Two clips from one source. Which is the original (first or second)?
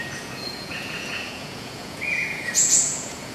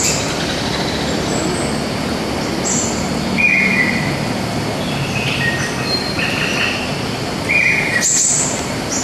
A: second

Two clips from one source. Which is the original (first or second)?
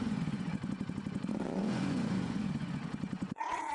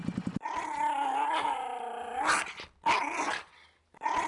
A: second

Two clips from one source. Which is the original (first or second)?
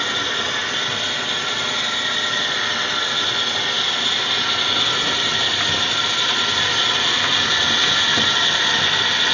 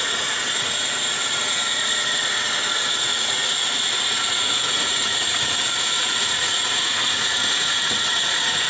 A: first